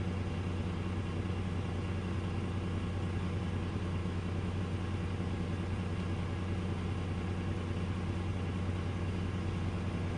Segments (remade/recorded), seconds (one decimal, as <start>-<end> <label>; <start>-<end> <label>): 0.0-4.0 recorded; 4.0-4.6 remade; 4.6-10.2 recorded